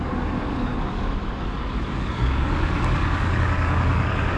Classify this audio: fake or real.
fake